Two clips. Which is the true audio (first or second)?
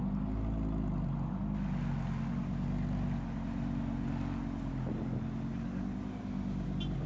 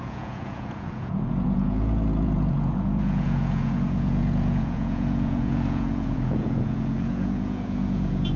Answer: first